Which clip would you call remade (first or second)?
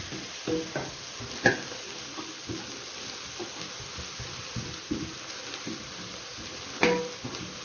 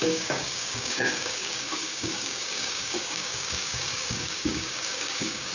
second